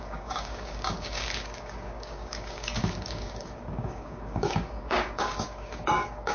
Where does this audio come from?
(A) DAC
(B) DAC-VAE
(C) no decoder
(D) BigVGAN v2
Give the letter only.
A